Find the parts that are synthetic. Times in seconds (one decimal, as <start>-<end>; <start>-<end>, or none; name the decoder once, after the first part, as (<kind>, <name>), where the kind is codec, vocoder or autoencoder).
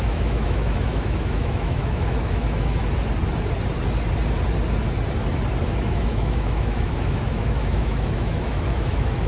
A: 0.0-2.8 (autoencoder, DAC-VAE); 5.7-9.3